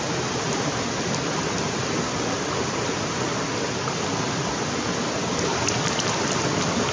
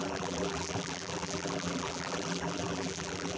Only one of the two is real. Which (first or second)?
first